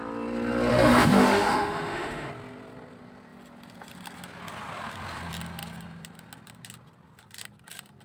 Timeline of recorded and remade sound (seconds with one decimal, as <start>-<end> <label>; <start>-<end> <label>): 0.0-0.7 recorded; 0.7-2.3 remade; 2.3-8.0 recorded